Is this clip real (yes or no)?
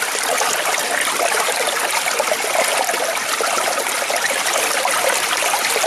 yes